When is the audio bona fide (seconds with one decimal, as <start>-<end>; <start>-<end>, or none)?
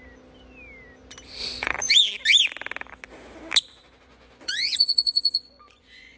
0.0-1.4; 1.9-4.1